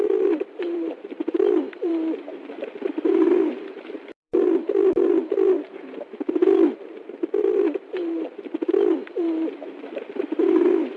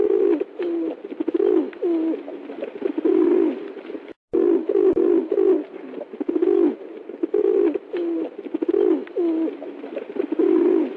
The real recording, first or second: second